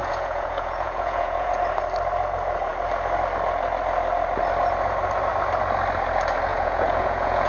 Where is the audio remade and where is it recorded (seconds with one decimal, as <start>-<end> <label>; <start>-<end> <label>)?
0.0-1.5 remade; 1.5-6.5 recorded; 6.5-7.5 remade